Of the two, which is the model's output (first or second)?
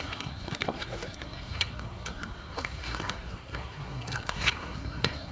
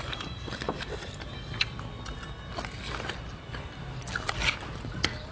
first